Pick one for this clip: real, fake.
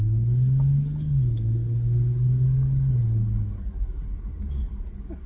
fake